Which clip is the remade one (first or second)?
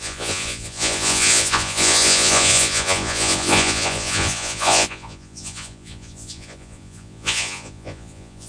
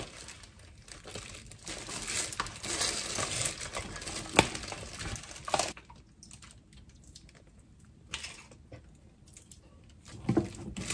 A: first